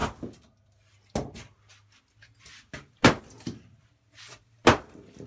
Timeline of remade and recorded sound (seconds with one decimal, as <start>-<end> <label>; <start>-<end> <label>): 0.0-3.2 recorded; 3.2-5.3 remade